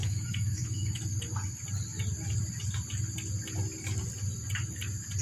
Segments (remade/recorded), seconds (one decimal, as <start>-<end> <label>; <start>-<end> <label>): 0.0-1.0 remade; 1.0-5.2 recorded